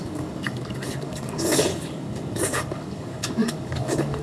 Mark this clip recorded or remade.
remade